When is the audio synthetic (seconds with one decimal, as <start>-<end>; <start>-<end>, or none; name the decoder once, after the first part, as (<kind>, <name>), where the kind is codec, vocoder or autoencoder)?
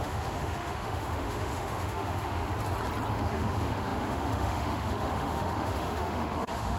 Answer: 0.0-2.5 (autoencoder, DAC-VAE); 3.1-6.8